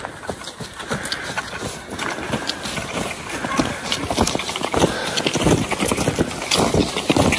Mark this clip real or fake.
real